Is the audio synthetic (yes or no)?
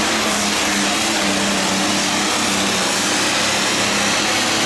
no